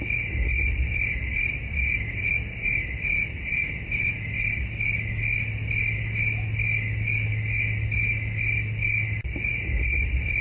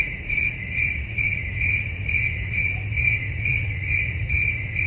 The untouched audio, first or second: first